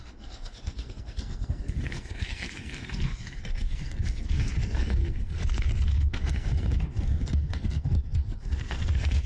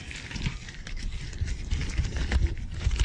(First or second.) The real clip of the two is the second